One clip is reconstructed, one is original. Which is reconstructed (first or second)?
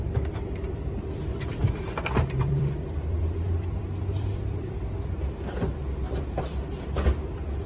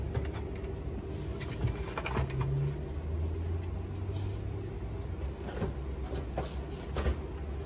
first